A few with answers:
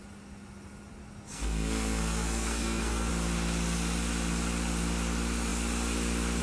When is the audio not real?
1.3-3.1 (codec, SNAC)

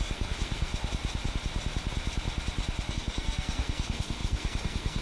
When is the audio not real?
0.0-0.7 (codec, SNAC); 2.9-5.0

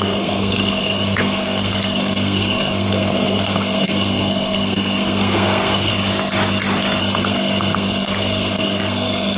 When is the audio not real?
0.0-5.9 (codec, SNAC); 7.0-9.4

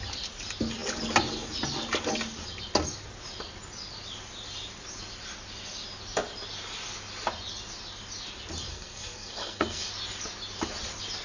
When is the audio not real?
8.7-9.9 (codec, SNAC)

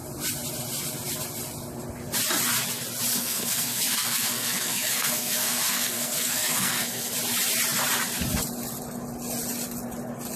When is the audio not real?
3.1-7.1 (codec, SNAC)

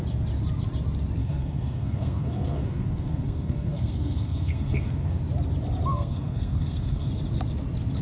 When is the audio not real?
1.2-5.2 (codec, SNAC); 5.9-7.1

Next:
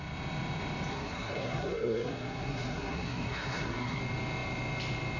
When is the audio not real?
0.9-4.0 (codec, SNAC)